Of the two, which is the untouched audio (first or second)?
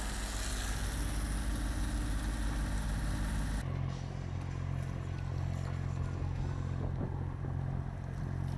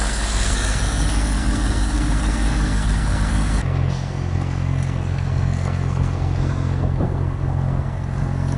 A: first